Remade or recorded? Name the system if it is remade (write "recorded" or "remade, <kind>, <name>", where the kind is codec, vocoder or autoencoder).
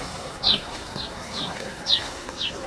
remade, codec, SNAC